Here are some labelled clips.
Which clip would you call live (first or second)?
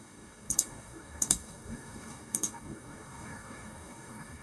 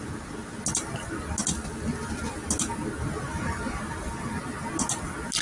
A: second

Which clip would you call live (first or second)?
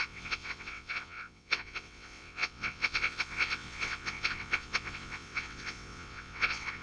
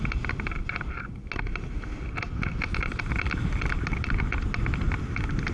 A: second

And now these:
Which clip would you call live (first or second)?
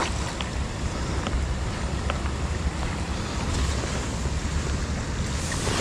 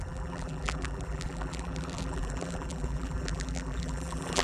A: first